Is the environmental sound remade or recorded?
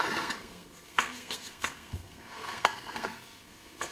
remade